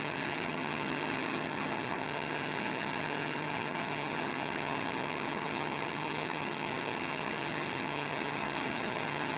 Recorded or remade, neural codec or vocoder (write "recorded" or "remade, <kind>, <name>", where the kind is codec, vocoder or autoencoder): remade, vocoder, HiFi-GAN